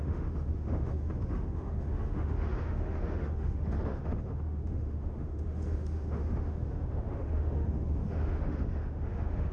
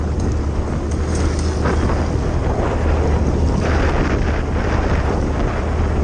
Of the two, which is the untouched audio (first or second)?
second